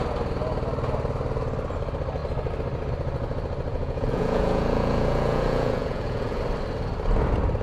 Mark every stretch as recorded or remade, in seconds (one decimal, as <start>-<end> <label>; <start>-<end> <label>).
0.0-3.7 recorded; 3.7-6.4 remade; 6.4-7.6 recorded